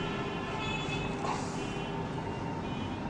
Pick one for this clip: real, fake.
real